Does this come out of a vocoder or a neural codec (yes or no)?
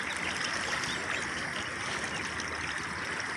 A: no